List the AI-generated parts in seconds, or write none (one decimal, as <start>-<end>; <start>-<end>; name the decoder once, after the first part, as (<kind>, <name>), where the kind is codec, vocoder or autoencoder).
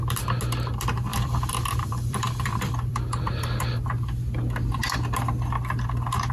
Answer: 1.1-3.3 (vocoder, BigVGAN v2)